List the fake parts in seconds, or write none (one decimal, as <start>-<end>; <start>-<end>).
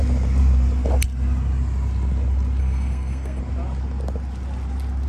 2.6-3.4